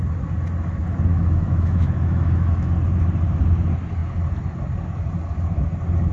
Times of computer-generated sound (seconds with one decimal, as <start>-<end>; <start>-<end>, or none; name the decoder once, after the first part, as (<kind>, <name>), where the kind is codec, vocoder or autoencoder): 1.1-2.7 (autoencoder, DAC-VAE)